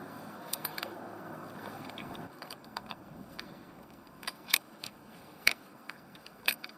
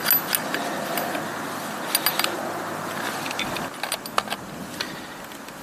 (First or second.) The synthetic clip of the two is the first